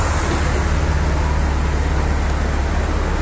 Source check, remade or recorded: recorded